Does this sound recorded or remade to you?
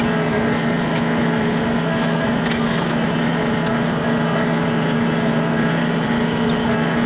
recorded